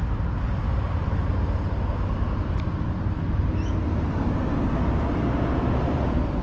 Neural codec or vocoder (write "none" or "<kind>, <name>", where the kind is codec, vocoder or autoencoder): none